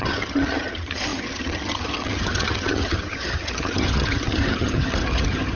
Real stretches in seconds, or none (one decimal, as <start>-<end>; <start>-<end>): none